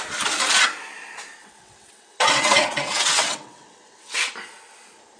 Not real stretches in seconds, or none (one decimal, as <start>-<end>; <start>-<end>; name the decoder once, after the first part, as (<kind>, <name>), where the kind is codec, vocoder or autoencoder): 1.4-4.3 (vocoder, WaveNeXt)